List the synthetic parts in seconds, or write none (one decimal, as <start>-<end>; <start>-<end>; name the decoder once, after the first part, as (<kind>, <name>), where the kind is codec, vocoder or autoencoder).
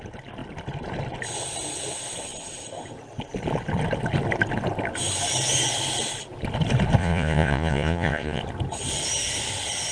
7.0-8.4 (vocoder, Vocos)